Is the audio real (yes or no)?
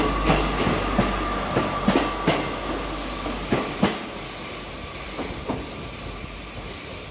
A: yes